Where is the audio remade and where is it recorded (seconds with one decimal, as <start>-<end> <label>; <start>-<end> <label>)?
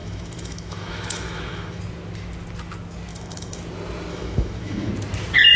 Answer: 0.0-1.8 remade; 1.8-3.1 recorded; 3.1-3.6 remade; 3.6-4.1 recorded; 4.1-4.9 remade; 4.9-5.6 recorded